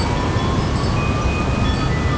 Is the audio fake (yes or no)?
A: no